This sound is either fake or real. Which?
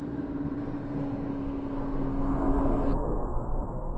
fake